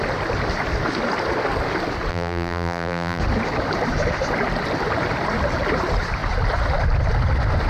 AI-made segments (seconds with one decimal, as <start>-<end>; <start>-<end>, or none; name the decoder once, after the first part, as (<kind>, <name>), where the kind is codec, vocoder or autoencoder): 2.1-3.2 (vocoder, BigVGAN v2)